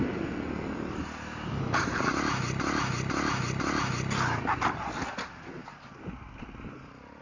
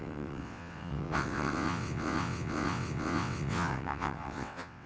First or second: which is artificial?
second